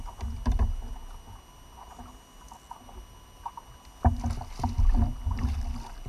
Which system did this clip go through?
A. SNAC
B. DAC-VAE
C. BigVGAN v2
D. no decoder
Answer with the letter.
D